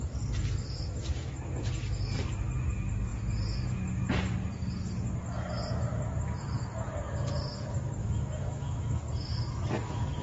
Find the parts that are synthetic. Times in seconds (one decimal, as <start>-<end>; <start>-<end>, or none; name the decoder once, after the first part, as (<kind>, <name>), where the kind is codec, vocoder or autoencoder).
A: 8.0-9.0 (autoencoder, DAC-VAE)